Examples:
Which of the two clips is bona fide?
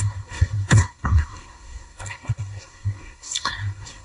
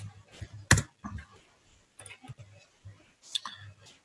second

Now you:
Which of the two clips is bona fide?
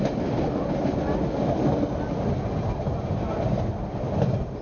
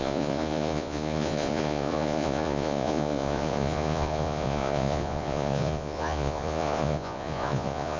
first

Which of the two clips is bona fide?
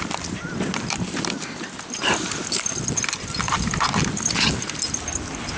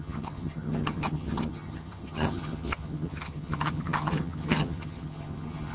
first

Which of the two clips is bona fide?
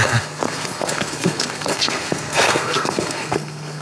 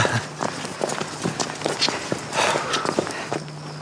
second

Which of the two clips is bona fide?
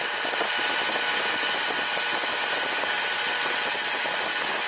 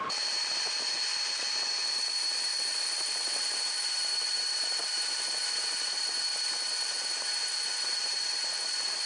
first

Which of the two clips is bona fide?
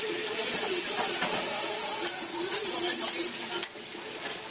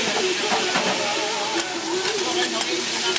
second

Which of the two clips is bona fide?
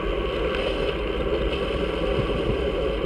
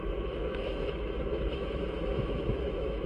first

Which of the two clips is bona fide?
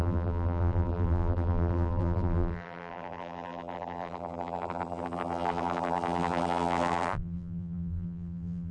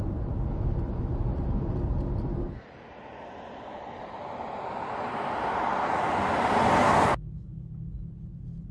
second